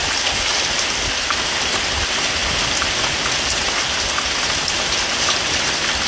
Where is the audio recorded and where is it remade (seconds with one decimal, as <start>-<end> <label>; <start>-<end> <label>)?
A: 0.0-6.1 recorded